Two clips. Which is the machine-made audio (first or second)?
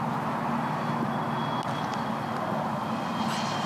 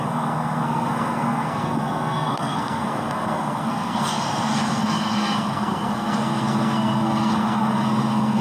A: second